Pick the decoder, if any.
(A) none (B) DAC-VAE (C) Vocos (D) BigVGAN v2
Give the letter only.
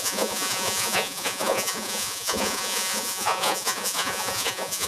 C